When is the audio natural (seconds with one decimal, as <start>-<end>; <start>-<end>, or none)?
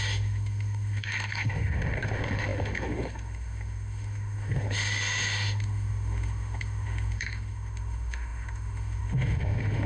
none